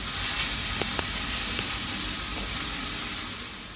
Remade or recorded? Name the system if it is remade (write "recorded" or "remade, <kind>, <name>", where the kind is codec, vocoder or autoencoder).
recorded